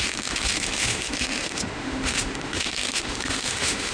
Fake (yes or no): yes